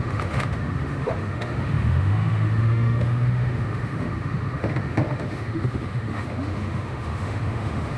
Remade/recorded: remade